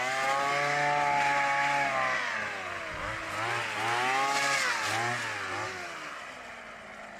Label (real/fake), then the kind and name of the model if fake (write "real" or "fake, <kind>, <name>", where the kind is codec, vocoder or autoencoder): real